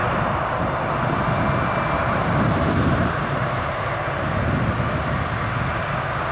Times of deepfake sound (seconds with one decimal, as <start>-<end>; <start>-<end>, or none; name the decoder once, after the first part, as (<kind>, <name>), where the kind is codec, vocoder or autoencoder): 2.0-4.3 (vocoder, BigVGAN v2)